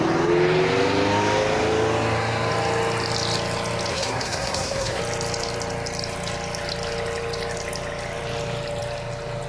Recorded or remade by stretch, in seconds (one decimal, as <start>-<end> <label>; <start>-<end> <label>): 0.0-3.9 recorded; 3.9-5.0 remade; 5.0-9.5 recorded